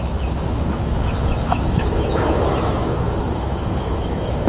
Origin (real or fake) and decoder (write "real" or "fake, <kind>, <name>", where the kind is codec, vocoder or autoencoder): fake, autoencoder, DAC-VAE